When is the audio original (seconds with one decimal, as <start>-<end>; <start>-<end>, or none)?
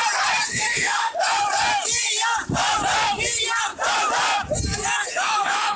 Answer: 0.0-0.5; 1.2-5.1